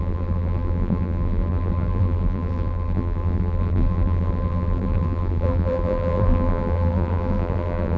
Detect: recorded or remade remade